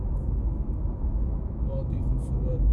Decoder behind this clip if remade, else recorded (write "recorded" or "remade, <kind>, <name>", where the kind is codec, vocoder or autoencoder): remade, autoencoder, DAC-VAE